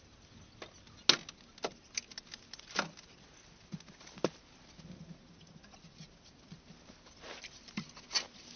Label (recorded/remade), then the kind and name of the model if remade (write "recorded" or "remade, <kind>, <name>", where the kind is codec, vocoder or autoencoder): recorded